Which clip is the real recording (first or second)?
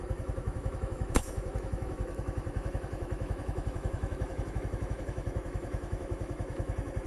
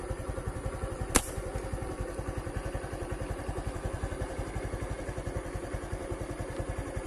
second